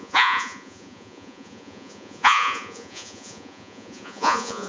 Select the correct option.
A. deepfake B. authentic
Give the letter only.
A